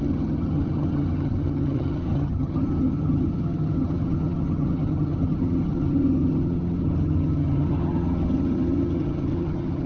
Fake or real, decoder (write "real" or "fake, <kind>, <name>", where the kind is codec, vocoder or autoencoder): fake, vocoder, HiFi-GAN